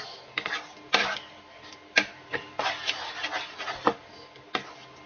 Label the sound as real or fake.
real